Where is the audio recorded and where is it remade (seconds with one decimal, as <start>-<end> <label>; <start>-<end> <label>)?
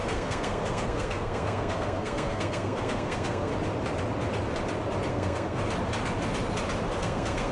0.0-3.5 remade; 3.5-5.1 recorded; 5.1-5.6 remade; 5.6-7.0 recorded; 7.0-7.5 remade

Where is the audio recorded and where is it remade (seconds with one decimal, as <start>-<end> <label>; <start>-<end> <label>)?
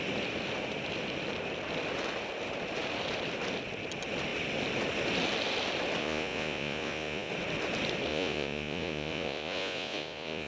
0.0-6.0 recorded; 6.0-7.3 remade; 7.3-8.1 recorded; 8.1-10.5 remade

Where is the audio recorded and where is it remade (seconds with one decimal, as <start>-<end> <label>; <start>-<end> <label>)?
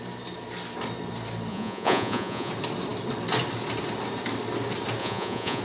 0.0-1.5 recorded; 1.5-2.5 remade; 2.5-5.0 recorded; 5.0-5.6 remade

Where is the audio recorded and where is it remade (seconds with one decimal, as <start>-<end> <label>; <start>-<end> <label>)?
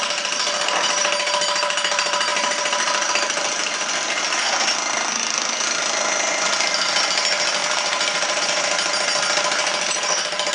0.0-10.5 recorded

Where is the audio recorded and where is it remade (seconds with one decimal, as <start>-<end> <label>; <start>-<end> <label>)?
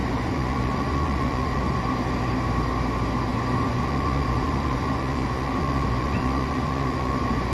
0.0-1.8 remade; 1.8-3.3 recorded; 3.3-7.5 remade